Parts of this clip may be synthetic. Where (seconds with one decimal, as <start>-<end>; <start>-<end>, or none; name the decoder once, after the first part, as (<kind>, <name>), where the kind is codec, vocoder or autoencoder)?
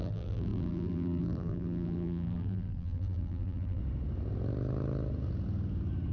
0.0-3.8 (vocoder, BigVGAN v2)